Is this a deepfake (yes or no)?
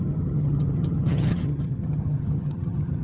yes